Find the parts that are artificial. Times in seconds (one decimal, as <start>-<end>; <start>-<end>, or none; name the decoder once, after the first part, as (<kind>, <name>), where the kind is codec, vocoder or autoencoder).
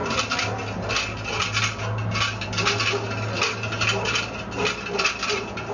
none